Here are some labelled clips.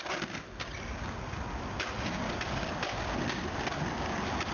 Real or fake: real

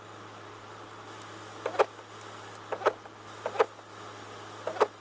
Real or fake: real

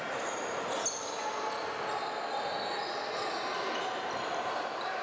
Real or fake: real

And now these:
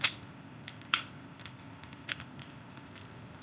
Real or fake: fake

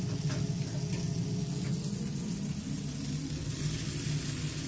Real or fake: real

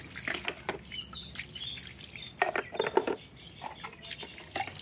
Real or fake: real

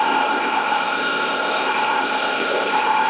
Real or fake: fake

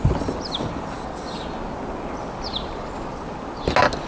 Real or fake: real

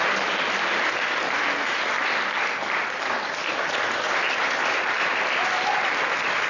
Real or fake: real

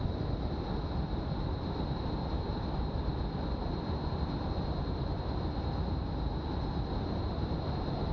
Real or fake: real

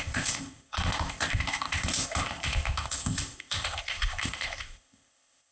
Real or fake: fake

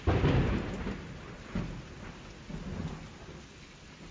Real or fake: real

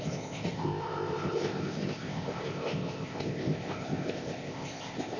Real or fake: fake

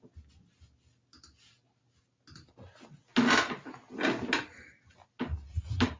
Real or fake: real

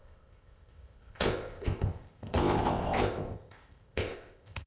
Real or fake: fake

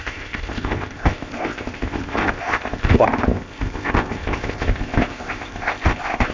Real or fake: fake